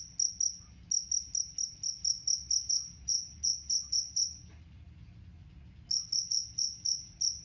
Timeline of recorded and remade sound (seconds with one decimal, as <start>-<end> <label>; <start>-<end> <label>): 0.0-2.7 recorded; 2.7-3.5 remade; 3.5-7.4 recorded